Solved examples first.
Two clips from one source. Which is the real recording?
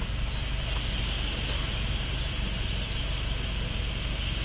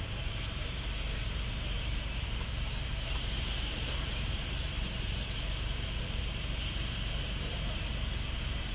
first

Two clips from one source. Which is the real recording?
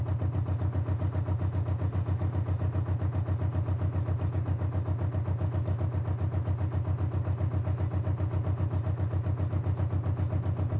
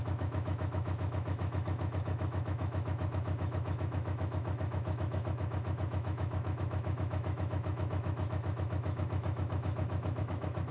first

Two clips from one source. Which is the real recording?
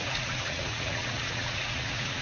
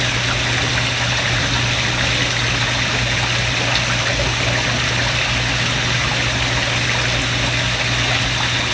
second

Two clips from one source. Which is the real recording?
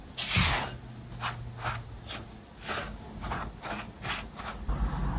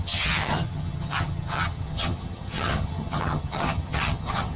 first